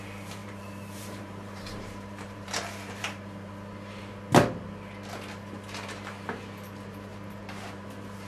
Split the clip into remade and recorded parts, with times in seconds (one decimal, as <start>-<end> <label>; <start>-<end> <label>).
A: 0.0-0.4 recorded; 0.4-3.5 remade; 3.5-7.1 recorded; 7.1-8.3 remade